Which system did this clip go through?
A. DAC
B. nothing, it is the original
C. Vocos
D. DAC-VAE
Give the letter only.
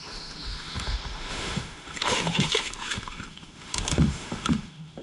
D